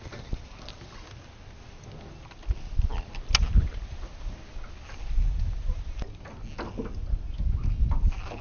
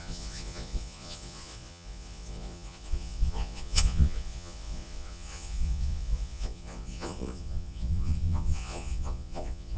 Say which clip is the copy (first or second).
second